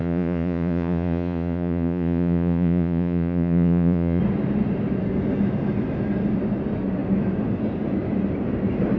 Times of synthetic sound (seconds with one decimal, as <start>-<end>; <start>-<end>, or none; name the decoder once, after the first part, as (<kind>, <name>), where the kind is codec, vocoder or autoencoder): 0.0-4.2 (vocoder, Vocos)